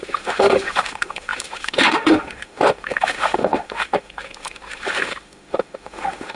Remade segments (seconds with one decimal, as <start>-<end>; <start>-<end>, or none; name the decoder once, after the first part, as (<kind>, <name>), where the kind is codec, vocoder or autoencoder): 0.0-6.4 (autoencoder, DAC-VAE)